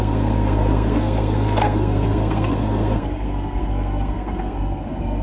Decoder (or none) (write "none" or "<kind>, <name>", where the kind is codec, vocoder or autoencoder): codec, SNAC